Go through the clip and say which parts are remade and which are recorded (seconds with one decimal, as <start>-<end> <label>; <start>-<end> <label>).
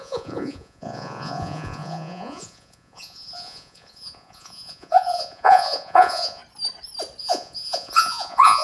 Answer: 0.0-6.4 remade; 6.4-7.2 recorded; 7.2-8.6 remade